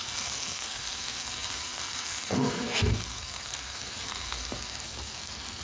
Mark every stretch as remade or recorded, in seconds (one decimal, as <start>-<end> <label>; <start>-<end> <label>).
0.0-5.6 remade